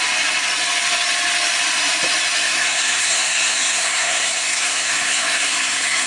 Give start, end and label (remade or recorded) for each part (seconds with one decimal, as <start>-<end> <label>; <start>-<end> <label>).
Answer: 0.0-2.4 recorded; 2.4-6.1 remade